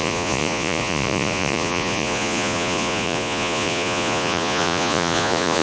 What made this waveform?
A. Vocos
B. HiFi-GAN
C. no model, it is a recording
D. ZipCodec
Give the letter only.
A